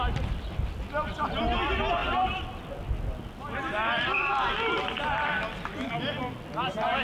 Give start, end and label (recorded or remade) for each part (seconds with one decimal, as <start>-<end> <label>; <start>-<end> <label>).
0.0-7.0 recorded